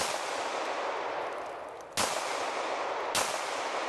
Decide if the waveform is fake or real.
real